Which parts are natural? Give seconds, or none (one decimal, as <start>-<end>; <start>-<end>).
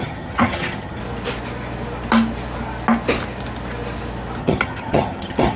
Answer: 1.0-4.4